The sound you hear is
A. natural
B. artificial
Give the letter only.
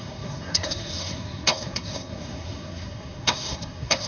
B